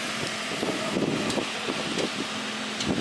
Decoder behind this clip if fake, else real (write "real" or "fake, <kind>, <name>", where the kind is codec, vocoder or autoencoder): real